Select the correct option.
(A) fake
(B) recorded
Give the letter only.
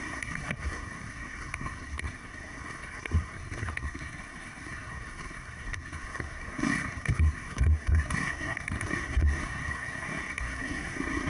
A